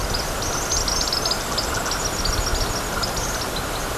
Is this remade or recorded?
recorded